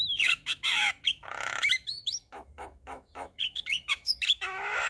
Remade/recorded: remade